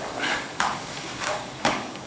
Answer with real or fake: fake